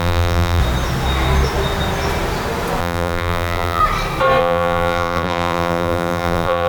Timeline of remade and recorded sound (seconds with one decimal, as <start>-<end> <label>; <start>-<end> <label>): 0.0-0.6 remade; 0.6-2.8 recorded; 2.8-3.8 remade; 3.8-4.4 recorded; 4.4-6.7 remade